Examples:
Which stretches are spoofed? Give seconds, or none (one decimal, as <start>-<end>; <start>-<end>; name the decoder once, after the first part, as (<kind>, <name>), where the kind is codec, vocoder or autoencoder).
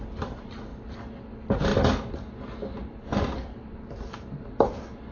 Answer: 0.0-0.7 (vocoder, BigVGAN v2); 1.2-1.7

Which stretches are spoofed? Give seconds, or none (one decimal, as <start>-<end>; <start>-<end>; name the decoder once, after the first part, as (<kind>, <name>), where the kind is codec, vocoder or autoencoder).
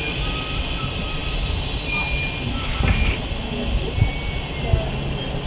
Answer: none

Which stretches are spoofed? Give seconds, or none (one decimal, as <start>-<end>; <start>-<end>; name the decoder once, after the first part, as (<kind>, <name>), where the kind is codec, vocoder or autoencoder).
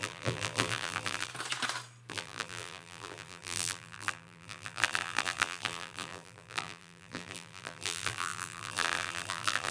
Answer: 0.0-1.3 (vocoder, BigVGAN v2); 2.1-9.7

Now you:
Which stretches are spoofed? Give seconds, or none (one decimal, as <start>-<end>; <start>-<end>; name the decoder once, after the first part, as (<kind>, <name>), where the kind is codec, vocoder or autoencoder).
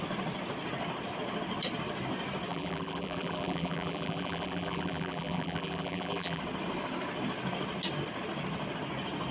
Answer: 2.5-6.4 (vocoder, BigVGAN v2)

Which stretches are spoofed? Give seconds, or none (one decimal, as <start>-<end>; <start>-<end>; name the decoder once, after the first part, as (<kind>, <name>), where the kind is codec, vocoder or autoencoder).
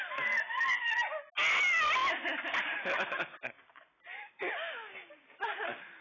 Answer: none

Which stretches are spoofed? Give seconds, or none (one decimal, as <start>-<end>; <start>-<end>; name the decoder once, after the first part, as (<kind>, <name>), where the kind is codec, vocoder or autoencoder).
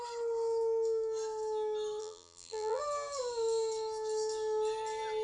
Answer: 2.0-2.8 (vocoder, BigVGAN v2)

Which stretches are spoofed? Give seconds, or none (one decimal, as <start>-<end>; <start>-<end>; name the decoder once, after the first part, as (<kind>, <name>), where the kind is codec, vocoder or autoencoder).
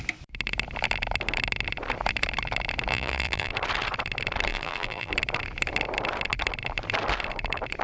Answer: 2.9-3.5 (vocoder, BigVGAN v2); 4.5-5.1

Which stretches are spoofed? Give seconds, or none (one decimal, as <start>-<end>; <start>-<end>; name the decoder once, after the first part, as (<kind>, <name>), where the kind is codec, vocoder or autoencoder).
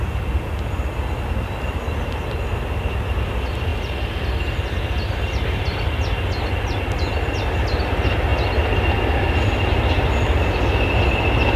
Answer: none